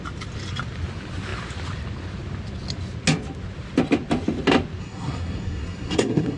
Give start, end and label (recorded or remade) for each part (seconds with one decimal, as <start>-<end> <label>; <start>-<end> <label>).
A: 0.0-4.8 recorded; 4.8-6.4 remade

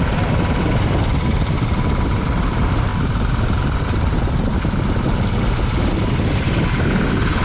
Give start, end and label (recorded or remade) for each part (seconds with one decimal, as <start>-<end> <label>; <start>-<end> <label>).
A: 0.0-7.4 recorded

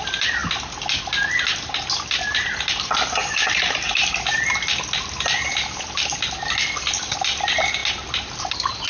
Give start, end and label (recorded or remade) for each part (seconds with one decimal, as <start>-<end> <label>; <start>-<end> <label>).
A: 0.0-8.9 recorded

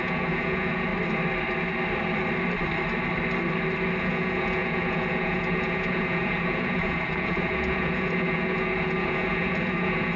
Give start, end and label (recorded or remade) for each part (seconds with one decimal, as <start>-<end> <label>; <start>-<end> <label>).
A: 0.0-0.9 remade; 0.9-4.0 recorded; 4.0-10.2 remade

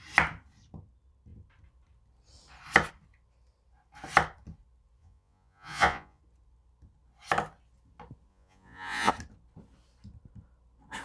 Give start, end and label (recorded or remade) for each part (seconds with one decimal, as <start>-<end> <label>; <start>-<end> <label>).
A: 0.0-5.0 recorded; 5.0-6.2 remade; 6.2-8.3 recorded; 8.3-9.1 remade; 9.1-11.0 recorded

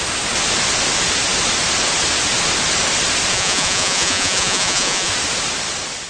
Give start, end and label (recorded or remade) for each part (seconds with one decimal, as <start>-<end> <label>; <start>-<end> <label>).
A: 0.0-3.3 recorded; 3.3-5.1 remade; 5.1-6.1 recorded

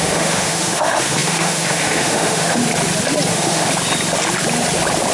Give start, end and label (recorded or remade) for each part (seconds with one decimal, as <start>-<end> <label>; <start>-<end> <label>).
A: 0.0-2.6 remade; 2.6-3.3 recorded; 3.3-3.7 remade; 3.7-5.1 recorded